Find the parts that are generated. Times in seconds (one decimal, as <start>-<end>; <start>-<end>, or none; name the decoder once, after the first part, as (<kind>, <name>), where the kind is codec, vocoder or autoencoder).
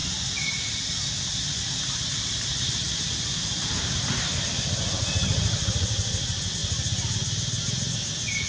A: 2.5-6.1 (vocoder, BigVGAN v2)